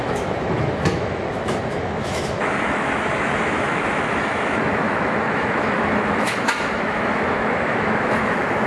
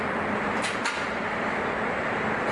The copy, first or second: first